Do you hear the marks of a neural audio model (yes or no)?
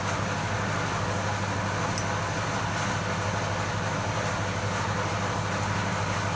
no